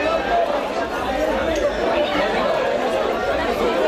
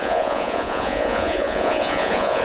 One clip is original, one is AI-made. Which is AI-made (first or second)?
second